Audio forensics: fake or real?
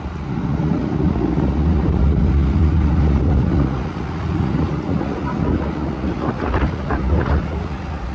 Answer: fake